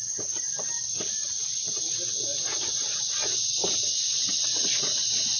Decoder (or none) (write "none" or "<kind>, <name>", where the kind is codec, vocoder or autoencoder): none